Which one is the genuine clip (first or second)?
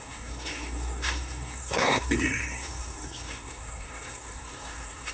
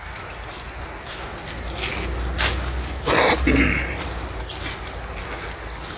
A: second